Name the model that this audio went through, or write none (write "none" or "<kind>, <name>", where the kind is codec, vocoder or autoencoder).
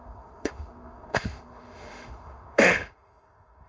autoencoder, DAC-VAE